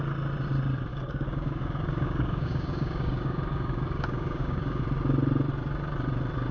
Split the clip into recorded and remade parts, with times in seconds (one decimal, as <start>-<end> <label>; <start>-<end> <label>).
0.0-0.9 recorded; 0.9-4.8 remade; 4.8-6.5 recorded